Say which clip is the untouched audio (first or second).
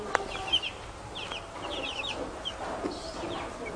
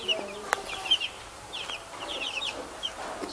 first